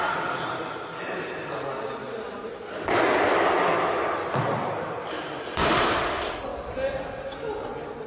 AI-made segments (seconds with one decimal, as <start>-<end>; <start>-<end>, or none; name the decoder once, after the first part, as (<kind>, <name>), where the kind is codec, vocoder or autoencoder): 0.0-0.6 (vocoder, BigVGAN v2); 1.2-3.7; 5.2-8.1

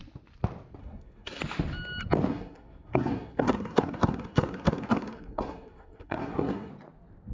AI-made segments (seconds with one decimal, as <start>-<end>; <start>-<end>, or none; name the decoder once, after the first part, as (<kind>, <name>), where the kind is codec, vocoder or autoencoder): 0.8-1.4 (codec, SNAC); 2.3-6.7

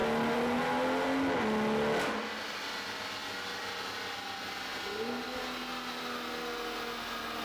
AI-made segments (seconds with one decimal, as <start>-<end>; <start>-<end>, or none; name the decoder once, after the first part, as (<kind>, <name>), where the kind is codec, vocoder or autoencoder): none

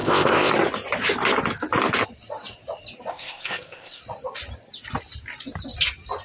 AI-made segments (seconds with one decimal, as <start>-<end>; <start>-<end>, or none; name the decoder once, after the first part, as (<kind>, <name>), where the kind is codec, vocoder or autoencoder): 0.0-0.5 (codec, ZipCodec); 3.1-4.0

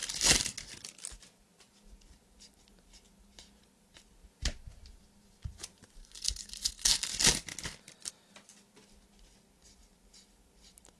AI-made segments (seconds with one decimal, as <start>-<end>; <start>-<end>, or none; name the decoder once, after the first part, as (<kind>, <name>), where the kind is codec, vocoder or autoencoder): 6.0-7.1 (codec, SNAC)

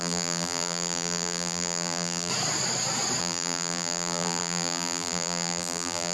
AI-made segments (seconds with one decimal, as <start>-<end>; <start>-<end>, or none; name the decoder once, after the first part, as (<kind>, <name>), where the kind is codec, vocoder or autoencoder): 0.0-2.3 (vocoder, BigVGAN v2); 3.2-6.1

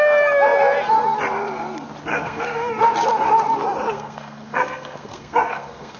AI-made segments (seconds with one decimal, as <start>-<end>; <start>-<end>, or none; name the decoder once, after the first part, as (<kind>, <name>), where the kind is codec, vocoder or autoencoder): 2.1-2.7 (codec, SNAC); 3.9-6.0

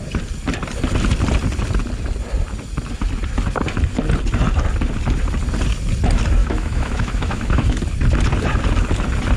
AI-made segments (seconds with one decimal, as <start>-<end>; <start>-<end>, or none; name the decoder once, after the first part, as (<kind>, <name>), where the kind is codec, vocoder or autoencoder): 6.4-7.8 (autoencoder, DAC-VAE)